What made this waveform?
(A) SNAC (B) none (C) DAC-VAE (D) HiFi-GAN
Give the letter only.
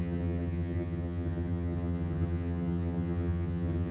D